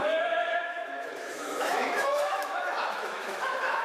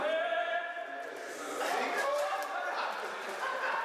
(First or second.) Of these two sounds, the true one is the second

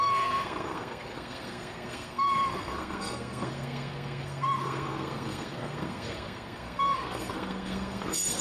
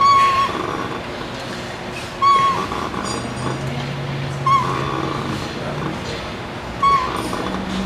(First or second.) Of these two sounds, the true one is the second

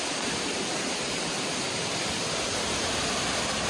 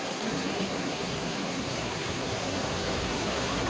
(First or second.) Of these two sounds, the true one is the first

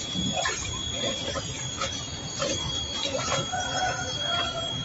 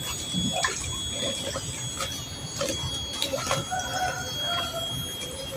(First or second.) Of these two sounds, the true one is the second